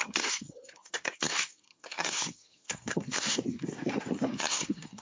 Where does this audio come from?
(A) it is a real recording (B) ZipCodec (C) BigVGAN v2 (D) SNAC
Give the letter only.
D